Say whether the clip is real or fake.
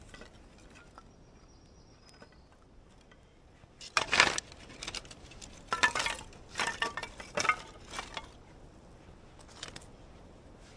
real